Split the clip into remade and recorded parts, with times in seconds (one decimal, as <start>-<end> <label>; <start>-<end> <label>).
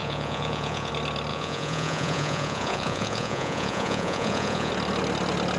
0.0-0.9 remade; 0.9-1.3 recorded; 1.3-4.7 remade; 4.7-5.6 recorded